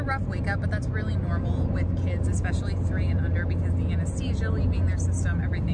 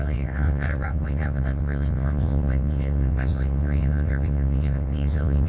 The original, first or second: first